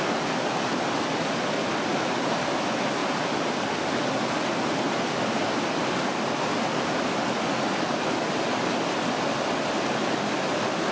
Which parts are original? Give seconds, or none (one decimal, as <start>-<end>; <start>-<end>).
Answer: 0.0-1.9; 2.5-10.9